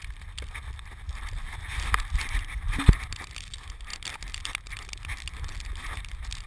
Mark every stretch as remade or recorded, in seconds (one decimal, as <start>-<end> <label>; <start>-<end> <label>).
0.0-6.5 recorded

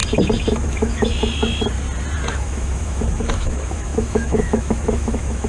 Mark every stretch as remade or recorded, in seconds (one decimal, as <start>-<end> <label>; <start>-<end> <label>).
0.0-0.5 recorded; 0.5-1.1 remade; 1.1-2.3 recorded; 2.3-5.5 remade

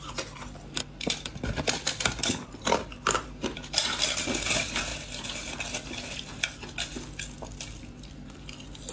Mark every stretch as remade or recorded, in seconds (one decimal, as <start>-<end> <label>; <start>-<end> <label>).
0.0-8.9 recorded

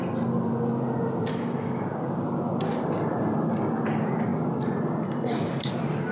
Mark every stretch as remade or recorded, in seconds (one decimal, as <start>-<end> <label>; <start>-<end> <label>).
0.0-1.3 recorded; 1.3-1.8 remade; 1.8-6.1 recorded

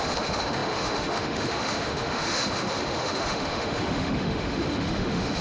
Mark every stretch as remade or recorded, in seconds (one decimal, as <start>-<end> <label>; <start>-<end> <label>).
0.0-5.4 remade

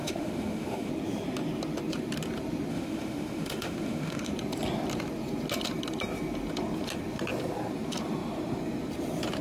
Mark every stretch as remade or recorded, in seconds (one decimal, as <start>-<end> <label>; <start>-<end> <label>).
0.0-0.9 remade; 0.9-2.7 recorded; 2.7-4.3 remade; 4.3-9.4 recorded

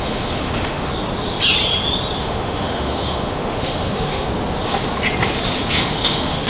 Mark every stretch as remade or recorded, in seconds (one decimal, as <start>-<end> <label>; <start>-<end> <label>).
0.0-0.9 remade; 0.9-2.2 recorded; 2.2-4.3 remade; 4.3-5.7 recorded; 5.7-6.5 remade